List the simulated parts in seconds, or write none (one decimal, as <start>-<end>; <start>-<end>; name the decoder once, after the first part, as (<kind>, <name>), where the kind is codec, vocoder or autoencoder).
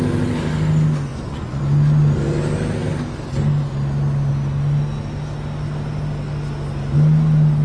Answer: 1.1-1.6 (vocoder, Vocos)